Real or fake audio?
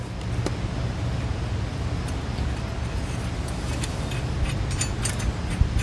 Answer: real